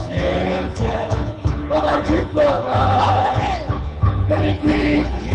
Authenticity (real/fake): fake